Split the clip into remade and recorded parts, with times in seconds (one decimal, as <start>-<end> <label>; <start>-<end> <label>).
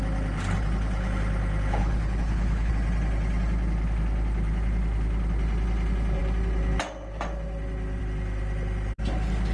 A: 0.0-1.8 recorded; 1.8-2.7 remade; 2.7-9.5 recorded